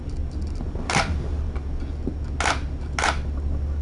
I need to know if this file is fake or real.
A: real